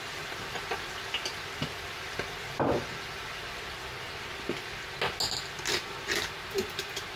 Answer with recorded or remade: recorded